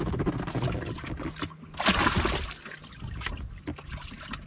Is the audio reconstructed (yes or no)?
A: no